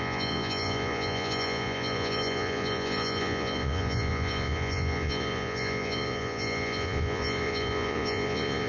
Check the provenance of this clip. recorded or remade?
remade